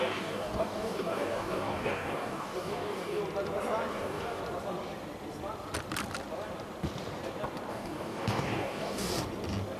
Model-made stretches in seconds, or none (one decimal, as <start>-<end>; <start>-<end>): 0.0-3.2; 3.9-4.4; 7.7-9.1